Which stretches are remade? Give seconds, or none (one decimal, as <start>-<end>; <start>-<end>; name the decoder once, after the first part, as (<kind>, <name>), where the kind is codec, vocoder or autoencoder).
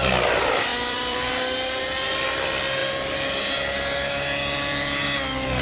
0.7-1.3 (vocoder, BigVGAN v2)